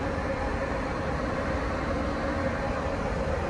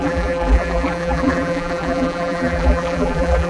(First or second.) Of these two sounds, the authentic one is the first